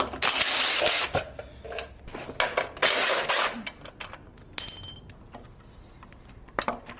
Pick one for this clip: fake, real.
real